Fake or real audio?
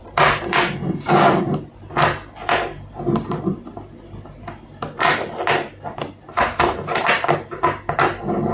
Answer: real